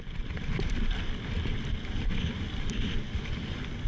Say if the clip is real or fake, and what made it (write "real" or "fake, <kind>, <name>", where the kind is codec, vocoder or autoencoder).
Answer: real